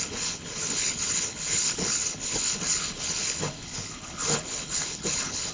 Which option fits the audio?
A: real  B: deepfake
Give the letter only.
B